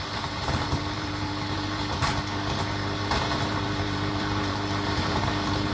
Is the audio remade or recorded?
remade